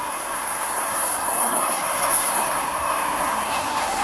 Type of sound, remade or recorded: remade